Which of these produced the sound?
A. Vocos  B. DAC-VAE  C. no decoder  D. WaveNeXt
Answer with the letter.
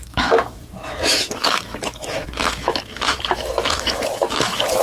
B